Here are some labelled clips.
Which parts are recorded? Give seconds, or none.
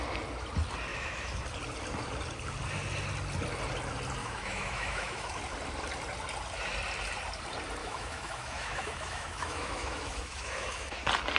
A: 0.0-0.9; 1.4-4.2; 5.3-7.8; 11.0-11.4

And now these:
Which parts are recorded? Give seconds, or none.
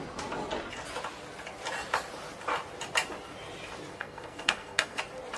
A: 0.0-3.9; 5.0-5.4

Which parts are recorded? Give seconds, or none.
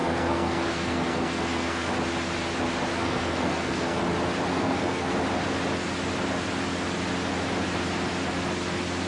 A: 1.9-2.9; 4.0-4.5; 5.1-9.1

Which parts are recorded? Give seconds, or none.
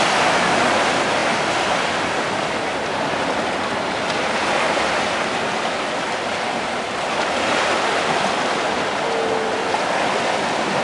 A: 0.0-10.8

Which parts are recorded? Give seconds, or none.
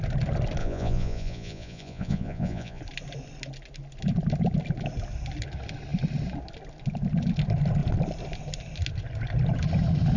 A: 0.0-0.6; 2.8-10.2